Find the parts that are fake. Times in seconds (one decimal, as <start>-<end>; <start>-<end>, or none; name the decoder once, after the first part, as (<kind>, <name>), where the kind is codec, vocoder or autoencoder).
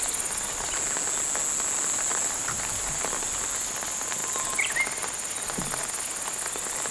2.2-2.9 (vocoder, BigVGAN v2)